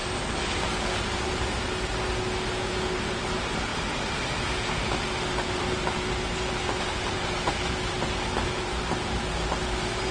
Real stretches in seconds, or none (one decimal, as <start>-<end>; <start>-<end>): 0.0-10.1